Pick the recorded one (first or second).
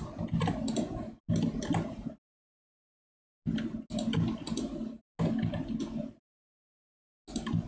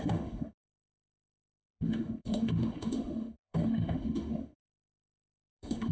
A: first